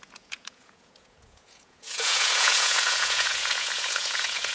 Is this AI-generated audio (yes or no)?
yes